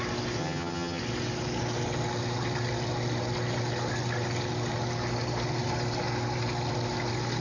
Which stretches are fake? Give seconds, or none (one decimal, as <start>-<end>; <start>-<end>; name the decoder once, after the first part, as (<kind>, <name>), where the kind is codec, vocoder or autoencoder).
0.4-1.0 (vocoder, HiFi-GAN)